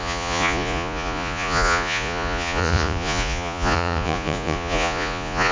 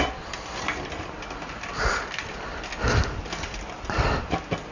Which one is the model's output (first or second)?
first